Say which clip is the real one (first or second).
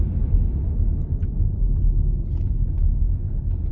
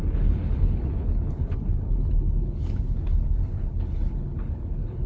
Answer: first